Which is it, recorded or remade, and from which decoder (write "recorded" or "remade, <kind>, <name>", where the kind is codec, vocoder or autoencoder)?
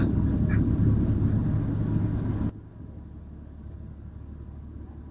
recorded